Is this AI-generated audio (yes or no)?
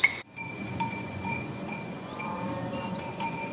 yes